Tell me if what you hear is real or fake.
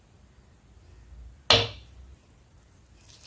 real